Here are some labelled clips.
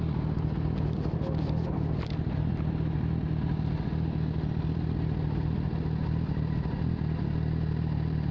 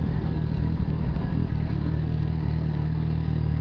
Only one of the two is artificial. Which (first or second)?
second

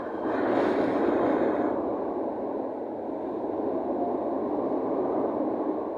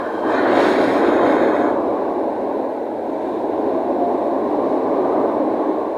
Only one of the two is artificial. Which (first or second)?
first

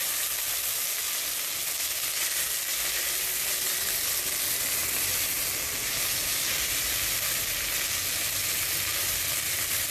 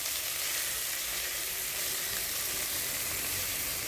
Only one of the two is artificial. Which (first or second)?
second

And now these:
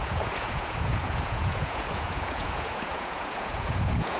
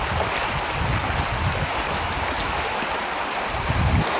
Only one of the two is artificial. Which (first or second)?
first